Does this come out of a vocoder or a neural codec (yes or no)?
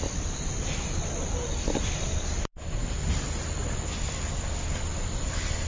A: no